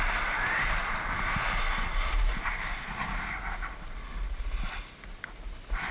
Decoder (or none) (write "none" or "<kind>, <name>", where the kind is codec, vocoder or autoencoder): none